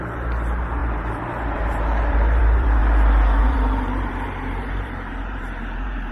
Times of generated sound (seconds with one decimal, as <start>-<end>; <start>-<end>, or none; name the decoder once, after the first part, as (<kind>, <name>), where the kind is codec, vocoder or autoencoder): 0.0-2.8 (vocoder, BigVGAN v2); 3.4-6.1